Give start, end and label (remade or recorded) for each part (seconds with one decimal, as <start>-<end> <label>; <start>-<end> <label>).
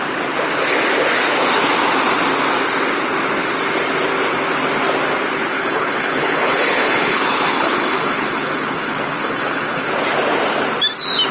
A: 0.0-5.5 recorded; 5.5-9.9 remade; 9.9-11.3 recorded